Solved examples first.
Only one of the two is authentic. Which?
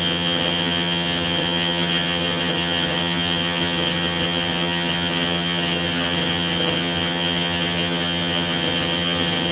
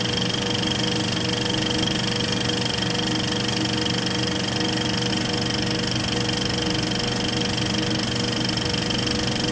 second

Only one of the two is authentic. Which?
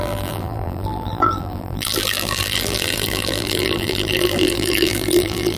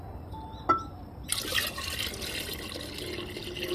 second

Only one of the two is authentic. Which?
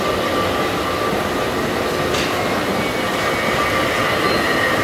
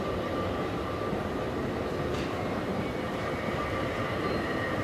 first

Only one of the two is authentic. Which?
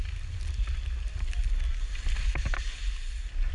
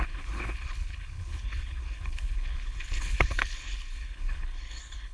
first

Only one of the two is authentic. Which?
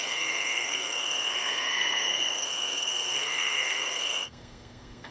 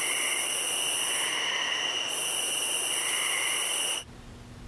second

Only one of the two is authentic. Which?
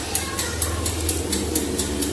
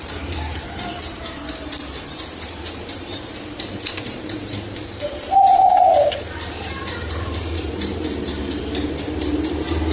first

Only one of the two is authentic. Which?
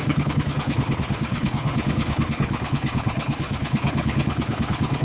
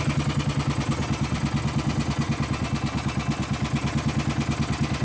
second